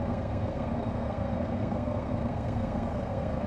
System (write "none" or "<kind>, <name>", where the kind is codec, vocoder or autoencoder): codec, SNAC